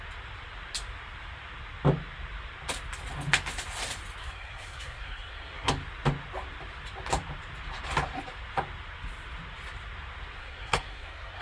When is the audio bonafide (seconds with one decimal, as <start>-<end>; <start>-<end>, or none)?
0.0-4.2; 5.7-10.4